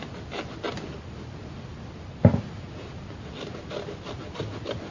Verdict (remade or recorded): recorded